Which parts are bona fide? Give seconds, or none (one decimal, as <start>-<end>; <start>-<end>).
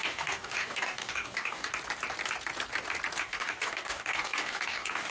1.7-3.2